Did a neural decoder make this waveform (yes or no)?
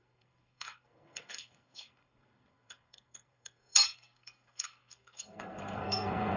yes